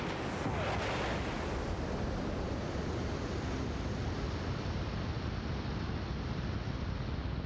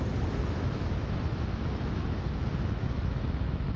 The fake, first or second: second